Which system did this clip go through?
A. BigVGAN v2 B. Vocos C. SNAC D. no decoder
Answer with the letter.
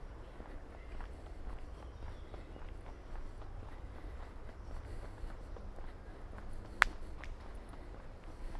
D